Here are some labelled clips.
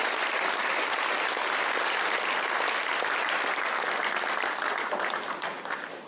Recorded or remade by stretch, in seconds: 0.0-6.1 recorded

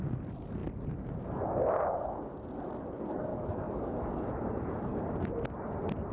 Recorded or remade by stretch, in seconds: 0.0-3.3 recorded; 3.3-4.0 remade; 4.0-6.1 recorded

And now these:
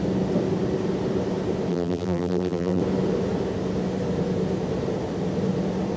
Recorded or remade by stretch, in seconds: 0.0-1.7 recorded; 1.7-2.8 remade; 2.8-6.0 recorded